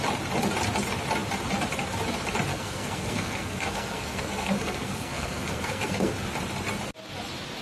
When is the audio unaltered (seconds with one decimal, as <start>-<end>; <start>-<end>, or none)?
0.0-2.5; 6.1-7.6